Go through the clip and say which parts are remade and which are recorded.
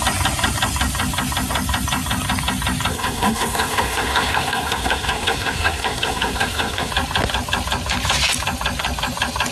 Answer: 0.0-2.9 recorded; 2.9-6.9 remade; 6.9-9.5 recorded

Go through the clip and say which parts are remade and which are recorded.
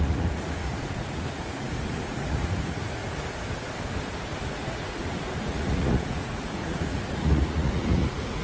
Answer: 0.0-3.0 remade; 3.0-4.4 recorded; 4.4-8.4 remade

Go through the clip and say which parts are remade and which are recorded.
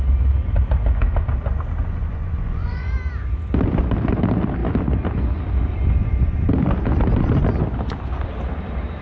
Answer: 0.0-1.8 recorded; 1.8-2.9 remade; 2.9-9.0 recorded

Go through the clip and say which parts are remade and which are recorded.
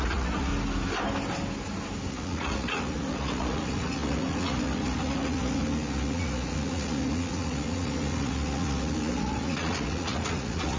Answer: 0.0-0.5 remade; 0.5-2.1 recorded; 2.1-10.8 remade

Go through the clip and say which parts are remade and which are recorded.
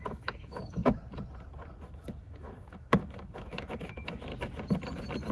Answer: 0.0-0.8 remade; 0.8-1.9 recorded; 1.9-4.3 remade; 4.3-5.3 recorded